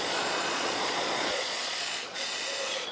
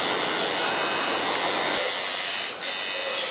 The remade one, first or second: first